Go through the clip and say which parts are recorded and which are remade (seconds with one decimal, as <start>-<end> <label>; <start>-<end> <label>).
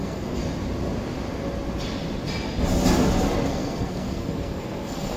0.0-0.4 remade; 0.4-3.5 recorded; 3.5-5.2 remade